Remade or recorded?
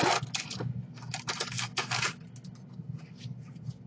recorded